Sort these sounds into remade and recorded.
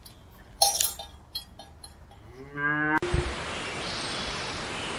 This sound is recorded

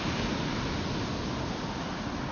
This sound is recorded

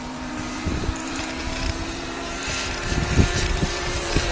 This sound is remade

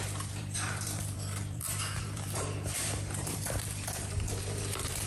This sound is remade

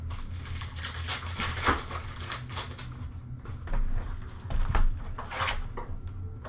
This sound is recorded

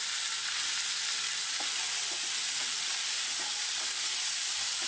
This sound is remade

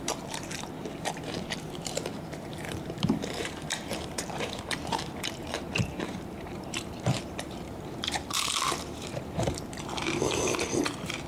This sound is remade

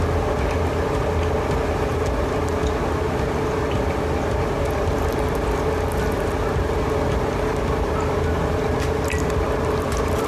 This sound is recorded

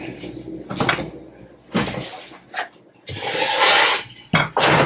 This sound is recorded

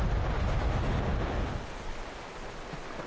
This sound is recorded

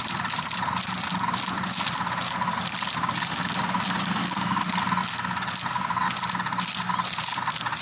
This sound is recorded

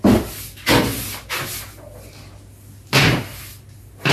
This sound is recorded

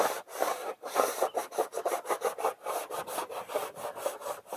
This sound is remade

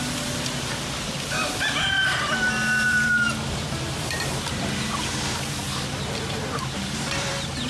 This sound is remade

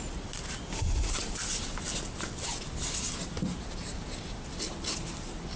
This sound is recorded